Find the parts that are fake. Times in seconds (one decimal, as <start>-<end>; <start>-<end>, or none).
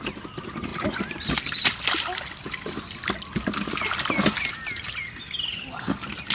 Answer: none